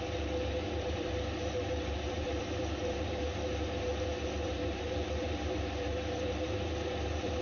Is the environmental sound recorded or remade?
remade